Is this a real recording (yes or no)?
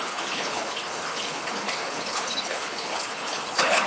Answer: no